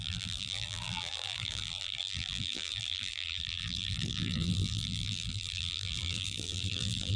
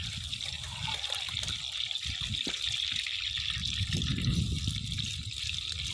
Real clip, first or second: second